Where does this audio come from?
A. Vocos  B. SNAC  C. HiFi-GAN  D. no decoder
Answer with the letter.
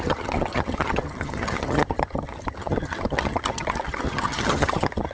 C